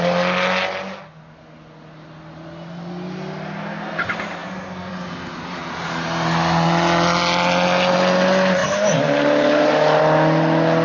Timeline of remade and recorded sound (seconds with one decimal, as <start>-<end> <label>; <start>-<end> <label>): 0.0-10.8 recorded